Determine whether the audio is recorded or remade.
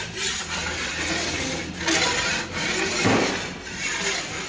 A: recorded